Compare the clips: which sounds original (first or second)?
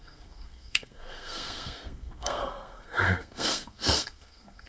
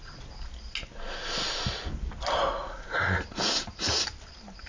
second